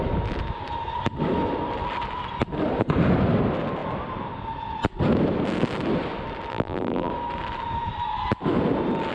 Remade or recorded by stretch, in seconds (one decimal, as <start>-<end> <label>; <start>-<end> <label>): 0.0-6.5 recorded; 6.5-7.1 remade; 7.1-9.1 recorded